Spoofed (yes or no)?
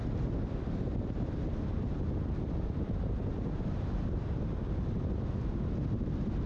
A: no